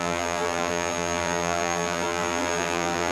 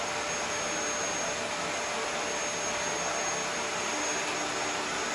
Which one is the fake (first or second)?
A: first